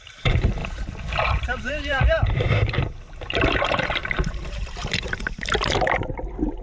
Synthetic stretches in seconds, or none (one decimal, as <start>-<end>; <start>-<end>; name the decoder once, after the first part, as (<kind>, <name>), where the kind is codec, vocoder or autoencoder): 0.0-6.6 (vocoder, BigVGAN v2)